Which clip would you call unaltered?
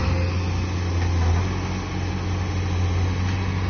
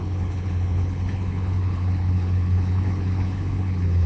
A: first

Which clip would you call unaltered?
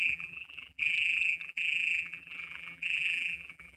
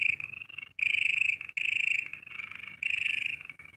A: second